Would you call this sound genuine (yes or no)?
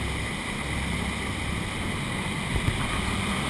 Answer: yes